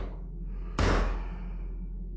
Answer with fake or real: real